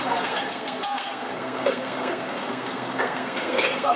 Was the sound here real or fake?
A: fake